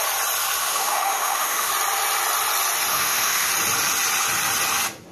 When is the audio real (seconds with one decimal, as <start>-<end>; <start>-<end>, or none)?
0.0-0.6; 1.7-2.9; 3.5-5.1